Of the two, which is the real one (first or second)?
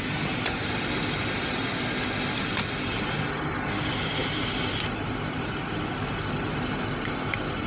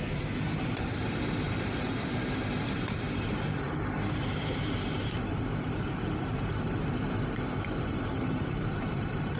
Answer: first